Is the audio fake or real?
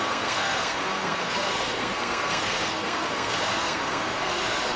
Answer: fake